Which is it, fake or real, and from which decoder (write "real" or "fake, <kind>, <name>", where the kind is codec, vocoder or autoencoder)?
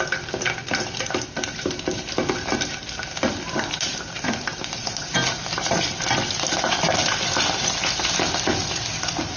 real